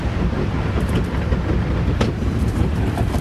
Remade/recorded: recorded